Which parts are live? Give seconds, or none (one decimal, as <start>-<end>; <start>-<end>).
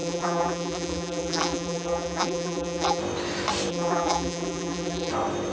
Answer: 3.0-3.7; 5.1-5.5